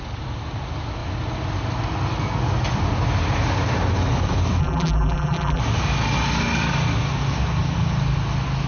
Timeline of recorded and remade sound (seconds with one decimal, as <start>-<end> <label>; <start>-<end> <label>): 0.0-4.6 recorded; 4.6-5.6 remade; 5.6-8.7 recorded